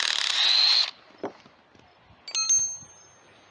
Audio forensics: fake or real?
real